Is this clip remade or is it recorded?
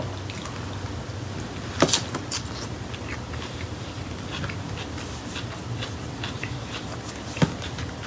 recorded